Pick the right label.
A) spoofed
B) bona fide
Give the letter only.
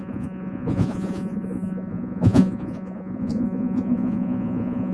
A